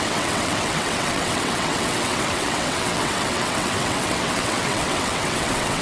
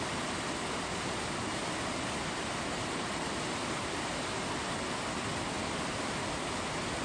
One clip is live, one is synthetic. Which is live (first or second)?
second